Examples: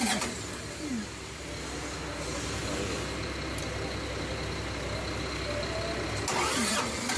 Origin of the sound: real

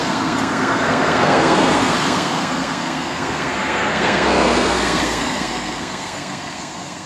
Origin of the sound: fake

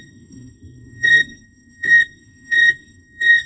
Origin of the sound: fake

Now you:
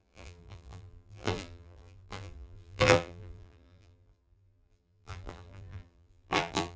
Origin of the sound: fake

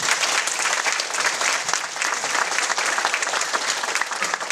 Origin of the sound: real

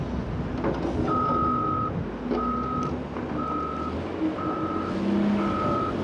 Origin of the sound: real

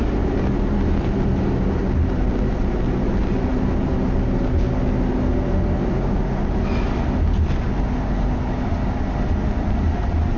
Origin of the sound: real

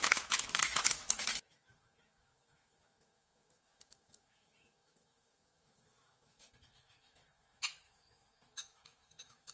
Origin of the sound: fake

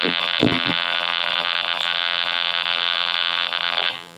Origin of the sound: fake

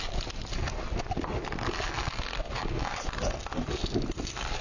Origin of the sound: real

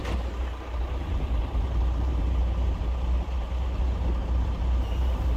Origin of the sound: fake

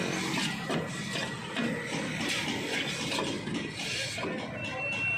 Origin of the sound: real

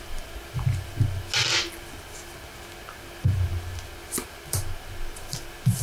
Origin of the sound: real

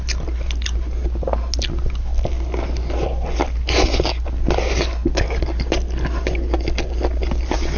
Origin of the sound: real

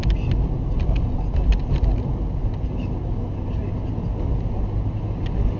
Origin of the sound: real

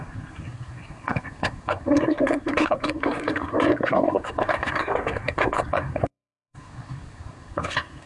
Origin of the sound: fake